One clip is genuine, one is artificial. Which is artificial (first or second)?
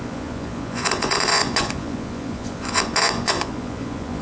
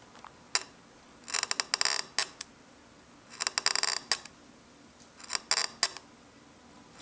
first